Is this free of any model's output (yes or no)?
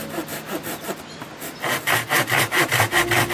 yes